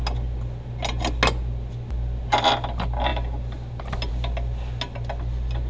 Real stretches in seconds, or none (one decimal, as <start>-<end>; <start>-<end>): 0.0-5.7